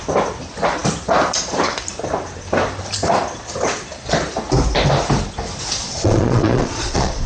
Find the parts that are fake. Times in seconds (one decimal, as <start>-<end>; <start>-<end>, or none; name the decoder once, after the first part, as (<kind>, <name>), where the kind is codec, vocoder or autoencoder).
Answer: 5.8-7.3 (vocoder, Vocos)

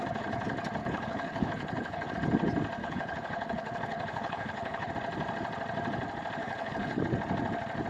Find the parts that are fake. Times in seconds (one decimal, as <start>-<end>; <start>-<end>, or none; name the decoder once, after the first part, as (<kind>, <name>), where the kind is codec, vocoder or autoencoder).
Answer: 0.8-2.1 (codec, HILCodec); 2.8-4.9; 6.4-7.0

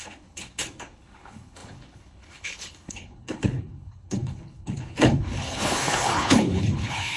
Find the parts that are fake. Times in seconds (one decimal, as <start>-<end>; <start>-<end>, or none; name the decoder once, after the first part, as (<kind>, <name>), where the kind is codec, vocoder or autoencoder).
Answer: 0.0-7.2 (codec, HILCodec)